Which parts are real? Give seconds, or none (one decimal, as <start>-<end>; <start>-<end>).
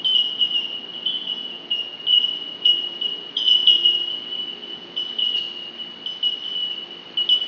0.0-0.9; 5.4-7.5